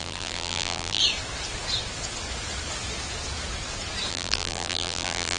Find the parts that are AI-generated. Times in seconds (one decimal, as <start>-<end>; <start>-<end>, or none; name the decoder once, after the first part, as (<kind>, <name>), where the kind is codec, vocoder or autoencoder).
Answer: 0.0-1.0 (vocoder, BigVGAN v2); 4.1-5.4